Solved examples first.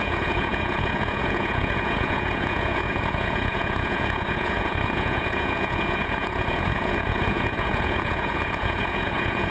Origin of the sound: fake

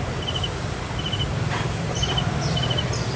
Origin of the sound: real